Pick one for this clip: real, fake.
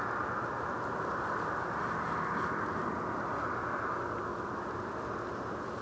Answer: real